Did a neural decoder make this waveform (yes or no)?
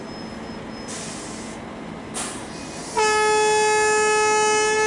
no